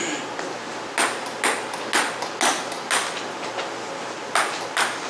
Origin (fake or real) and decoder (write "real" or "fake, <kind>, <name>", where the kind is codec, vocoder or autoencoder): real